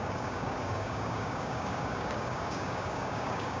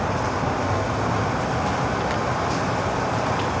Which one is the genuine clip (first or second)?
second